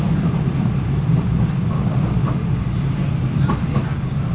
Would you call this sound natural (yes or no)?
yes